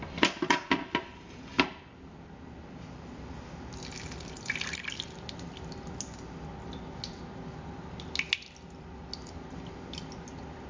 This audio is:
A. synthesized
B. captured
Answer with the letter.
B